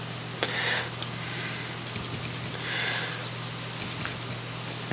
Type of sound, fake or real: real